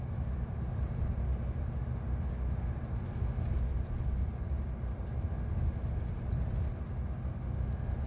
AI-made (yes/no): no